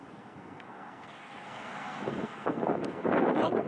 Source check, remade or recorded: remade